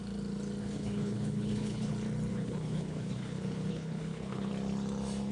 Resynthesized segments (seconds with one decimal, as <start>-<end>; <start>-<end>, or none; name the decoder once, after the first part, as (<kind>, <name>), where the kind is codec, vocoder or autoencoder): 0.6-1.9 (codec, HILCodec); 2.3-4.5